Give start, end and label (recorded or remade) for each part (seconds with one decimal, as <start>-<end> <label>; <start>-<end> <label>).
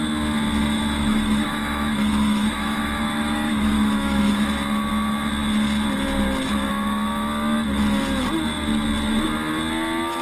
0.0-0.6 recorded; 0.6-4.5 remade; 4.5-10.2 recorded